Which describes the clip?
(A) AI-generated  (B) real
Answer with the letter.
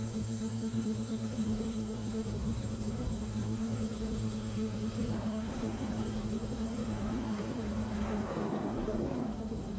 A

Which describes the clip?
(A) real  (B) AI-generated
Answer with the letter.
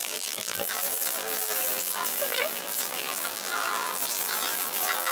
B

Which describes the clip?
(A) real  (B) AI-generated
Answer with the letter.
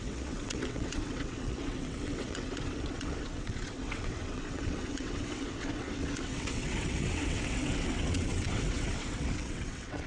B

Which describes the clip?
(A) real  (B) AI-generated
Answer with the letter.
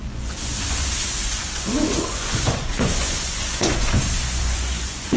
B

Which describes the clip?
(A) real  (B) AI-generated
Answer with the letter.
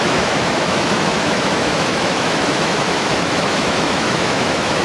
B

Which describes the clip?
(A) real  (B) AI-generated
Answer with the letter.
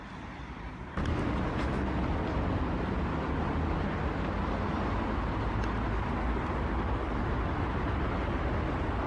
A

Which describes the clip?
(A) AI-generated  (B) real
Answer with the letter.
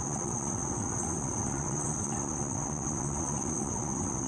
A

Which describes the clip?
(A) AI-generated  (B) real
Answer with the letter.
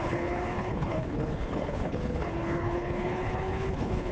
A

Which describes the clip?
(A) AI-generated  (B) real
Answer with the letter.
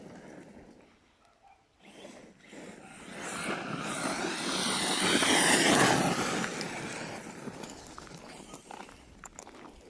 B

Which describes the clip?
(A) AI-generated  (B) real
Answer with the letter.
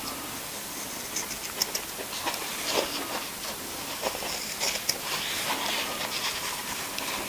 B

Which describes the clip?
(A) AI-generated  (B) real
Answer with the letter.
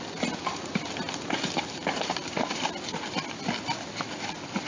B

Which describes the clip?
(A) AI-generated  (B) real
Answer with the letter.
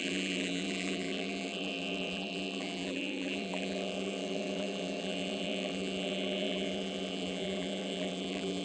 A